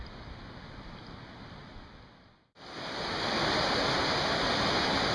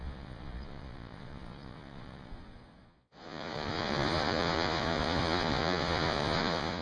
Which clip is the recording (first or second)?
first